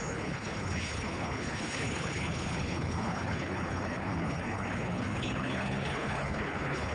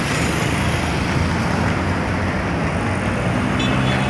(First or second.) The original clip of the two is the second